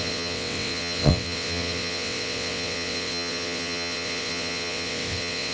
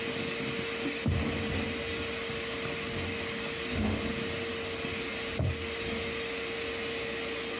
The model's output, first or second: first